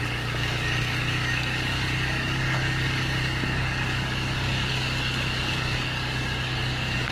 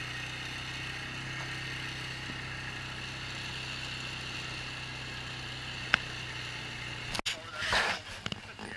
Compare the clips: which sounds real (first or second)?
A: second